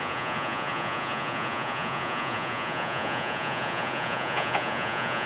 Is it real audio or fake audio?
fake